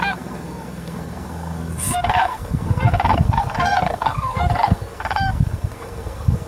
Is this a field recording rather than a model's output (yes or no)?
no